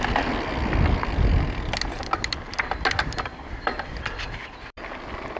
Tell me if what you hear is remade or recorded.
recorded